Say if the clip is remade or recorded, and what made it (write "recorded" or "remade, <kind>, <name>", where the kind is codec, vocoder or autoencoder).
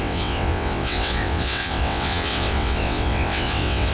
remade, vocoder, WaveNeXt